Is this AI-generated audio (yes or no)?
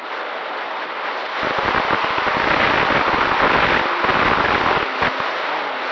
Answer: no